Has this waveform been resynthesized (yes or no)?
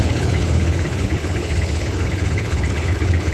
yes